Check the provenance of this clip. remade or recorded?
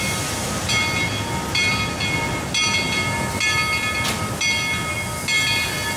recorded